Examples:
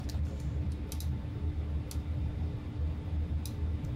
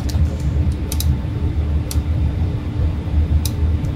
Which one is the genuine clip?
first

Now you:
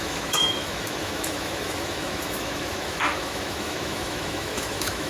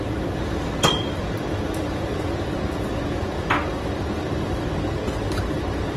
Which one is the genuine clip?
second